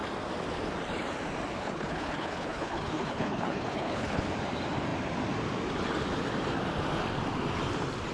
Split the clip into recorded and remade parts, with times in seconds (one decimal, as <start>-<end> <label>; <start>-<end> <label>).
0.0-1.6 recorded; 1.6-4.2 remade; 4.2-8.1 recorded